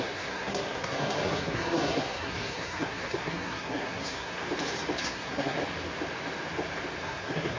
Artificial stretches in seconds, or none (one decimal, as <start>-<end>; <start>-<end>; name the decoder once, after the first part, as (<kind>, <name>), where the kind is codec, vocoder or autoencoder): 0.0-4.4 (codec, SNAC); 5.0-5.6; 7.0-7.6

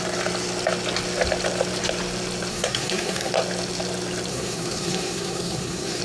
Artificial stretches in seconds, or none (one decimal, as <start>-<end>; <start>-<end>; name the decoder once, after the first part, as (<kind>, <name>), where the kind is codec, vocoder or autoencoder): 2.5-3.3 (codec, SNAC); 4.3-6.0

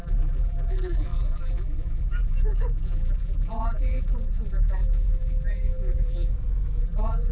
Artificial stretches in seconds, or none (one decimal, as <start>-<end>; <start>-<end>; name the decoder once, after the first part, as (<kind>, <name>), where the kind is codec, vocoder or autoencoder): 0.0-6.3 (vocoder, BigVGAN v2); 6.8-7.3

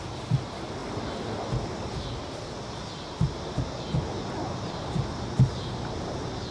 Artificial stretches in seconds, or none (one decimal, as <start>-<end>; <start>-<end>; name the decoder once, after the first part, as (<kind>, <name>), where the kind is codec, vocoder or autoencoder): none

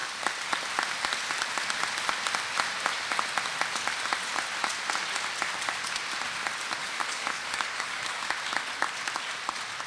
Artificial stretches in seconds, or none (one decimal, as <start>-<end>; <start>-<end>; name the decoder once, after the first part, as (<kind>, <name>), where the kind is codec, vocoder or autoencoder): 6.8-8.3 (codec, DAC)

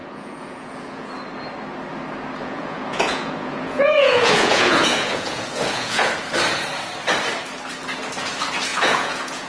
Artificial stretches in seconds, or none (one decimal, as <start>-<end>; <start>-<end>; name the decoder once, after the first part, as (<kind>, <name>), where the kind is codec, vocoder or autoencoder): 0.0-1.1 (vocoder, Vocos); 2.4-6.1; 8.7-9.5